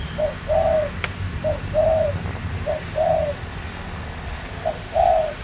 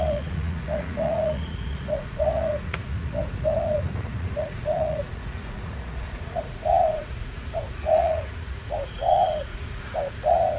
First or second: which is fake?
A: second